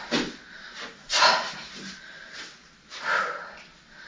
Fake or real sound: real